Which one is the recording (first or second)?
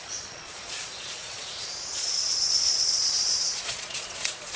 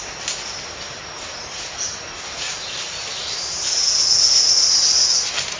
second